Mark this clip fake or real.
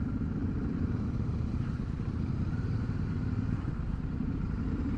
fake